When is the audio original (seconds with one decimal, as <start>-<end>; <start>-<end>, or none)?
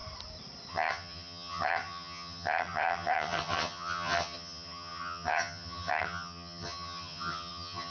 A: 0.0-0.7